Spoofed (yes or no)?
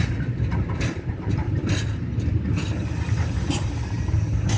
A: no